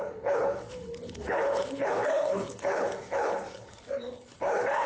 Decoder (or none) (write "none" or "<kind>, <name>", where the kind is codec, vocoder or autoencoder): codec, HILCodec